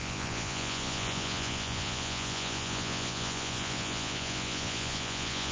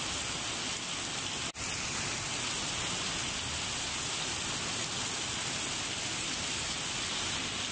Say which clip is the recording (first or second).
second